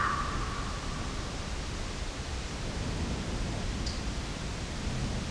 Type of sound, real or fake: real